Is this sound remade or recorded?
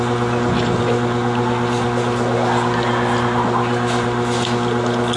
recorded